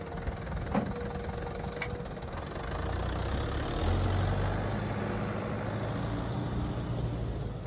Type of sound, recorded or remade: recorded